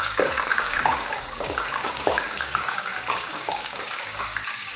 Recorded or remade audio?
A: remade